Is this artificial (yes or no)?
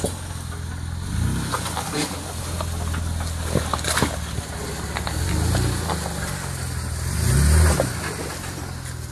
no